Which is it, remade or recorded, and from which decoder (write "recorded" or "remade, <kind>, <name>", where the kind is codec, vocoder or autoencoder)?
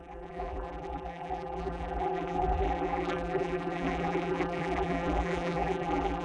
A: remade, vocoder, BigVGAN v2